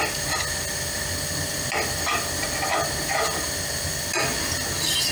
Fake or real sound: real